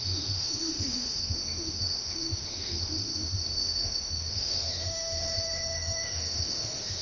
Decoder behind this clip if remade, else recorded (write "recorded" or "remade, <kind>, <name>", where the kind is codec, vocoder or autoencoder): remade, autoencoder, DAC-VAE